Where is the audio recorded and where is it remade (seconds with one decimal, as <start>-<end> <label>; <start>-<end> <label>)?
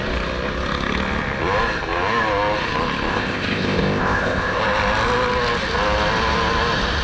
0.0-3.1 recorded; 3.1-4.6 remade; 4.6-7.0 recorded